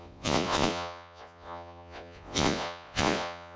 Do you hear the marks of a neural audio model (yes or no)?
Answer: yes